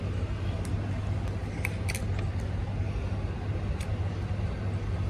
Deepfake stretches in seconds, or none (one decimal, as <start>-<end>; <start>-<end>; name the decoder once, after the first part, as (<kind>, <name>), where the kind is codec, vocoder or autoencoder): none